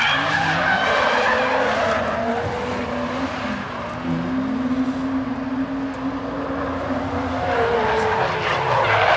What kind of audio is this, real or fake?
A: real